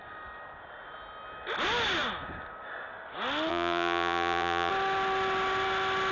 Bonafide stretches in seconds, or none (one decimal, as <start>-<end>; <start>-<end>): 0.0-3.5; 4.7-6.1